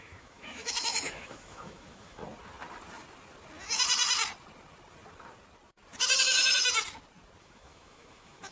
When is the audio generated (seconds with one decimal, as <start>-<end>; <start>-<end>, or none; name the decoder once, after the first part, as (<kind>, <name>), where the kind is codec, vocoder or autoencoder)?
0.0-2.2 (autoencoder, DAC-VAE); 6.2-6.7; 7.4-8.5